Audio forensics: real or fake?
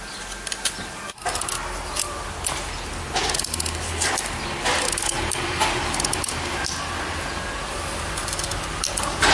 real